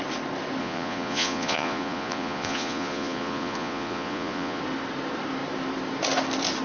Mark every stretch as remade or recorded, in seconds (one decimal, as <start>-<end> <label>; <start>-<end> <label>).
0.0-0.6 recorded; 0.6-4.6 remade; 4.6-6.6 recorded